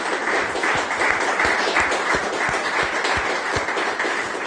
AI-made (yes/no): no